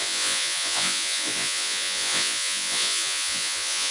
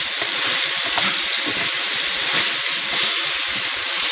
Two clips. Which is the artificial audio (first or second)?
first